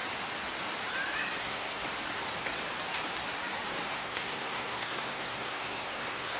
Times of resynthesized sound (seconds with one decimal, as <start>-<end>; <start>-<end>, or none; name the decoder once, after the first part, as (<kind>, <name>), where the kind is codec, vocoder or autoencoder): 1.4-1.8 (codec, SNAC); 3.9-6.4